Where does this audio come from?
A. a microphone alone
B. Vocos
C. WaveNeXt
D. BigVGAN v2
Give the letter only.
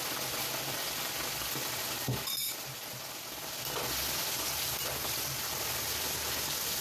A